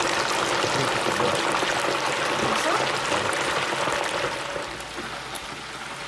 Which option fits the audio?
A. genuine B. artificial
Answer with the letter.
A